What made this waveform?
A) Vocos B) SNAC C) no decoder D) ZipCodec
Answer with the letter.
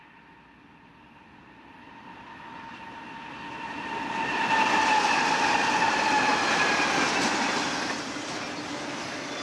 C